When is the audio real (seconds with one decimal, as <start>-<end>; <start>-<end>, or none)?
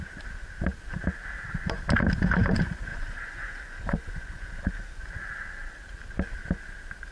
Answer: 0.0-2.9; 5.0-7.1